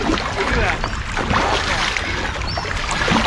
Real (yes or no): yes